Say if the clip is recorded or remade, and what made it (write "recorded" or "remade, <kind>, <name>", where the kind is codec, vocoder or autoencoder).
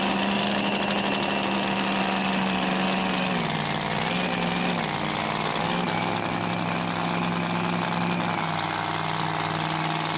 recorded